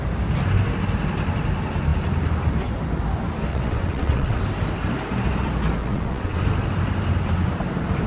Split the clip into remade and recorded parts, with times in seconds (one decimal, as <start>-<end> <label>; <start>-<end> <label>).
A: 0.0-3.5 recorded; 3.5-4.4 remade; 4.4-5.8 recorded; 5.8-6.4 remade; 6.4-8.1 recorded